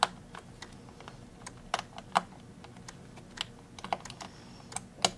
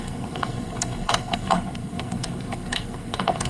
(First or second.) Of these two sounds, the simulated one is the second